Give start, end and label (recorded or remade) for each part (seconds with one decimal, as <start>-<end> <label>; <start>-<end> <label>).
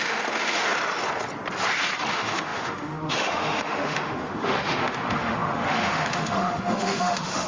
0.0-0.7 remade; 0.7-2.1 recorded; 2.1-7.5 remade